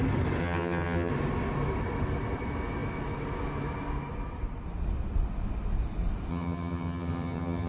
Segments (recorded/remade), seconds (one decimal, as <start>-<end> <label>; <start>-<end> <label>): 0.0-0.4 recorded; 0.4-1.1 remade; 1.1-6.3 recorded; 6.3-7.7 remade